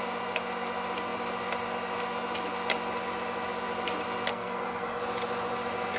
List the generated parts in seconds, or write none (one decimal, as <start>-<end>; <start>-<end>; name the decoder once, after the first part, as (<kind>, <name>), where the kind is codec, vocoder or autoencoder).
4.3-5.0 (codec, SNAC)